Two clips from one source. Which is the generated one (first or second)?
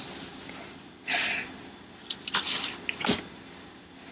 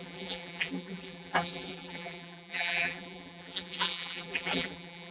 second